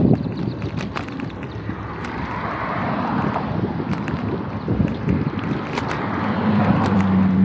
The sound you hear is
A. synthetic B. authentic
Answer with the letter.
A